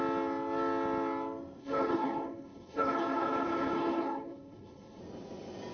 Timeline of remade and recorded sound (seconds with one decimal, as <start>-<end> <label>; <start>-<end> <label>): 0.0-1.6 recorded; 1.6-5.0 remade; 5.0-5.7 recorded